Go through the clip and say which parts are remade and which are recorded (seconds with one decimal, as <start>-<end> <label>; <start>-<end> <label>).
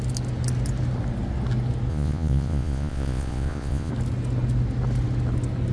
0.0-1.9 recorded; 1.9-3.9 remade; 3.9-5.7 recorded